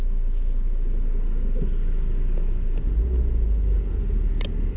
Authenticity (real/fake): real